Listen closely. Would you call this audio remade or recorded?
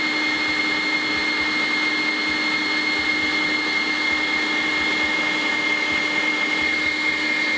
recorded